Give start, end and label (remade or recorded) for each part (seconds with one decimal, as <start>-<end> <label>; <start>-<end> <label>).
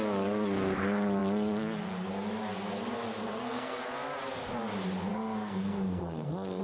0.0-3.2 recorded; 3.2-3.8 remade; 3.8-5.1 recorded; 5.1-6.6 remade